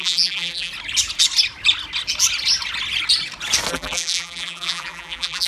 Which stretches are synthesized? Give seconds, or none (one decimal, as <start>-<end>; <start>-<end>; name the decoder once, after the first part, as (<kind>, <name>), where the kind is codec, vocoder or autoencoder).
0.0-0.7 (vocoder, BigVGAN v2); 3.7-5.5